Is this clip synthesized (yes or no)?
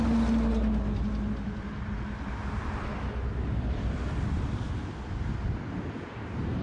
no